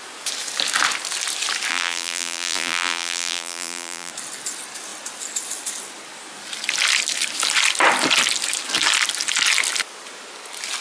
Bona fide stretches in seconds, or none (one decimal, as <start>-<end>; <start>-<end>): 0.0-1.7; 4.1-10.8